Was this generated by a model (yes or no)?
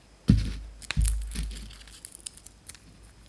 no